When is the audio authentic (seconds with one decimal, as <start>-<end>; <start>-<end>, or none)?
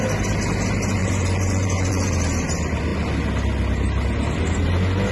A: 0.0-1.0; 2.1-5.1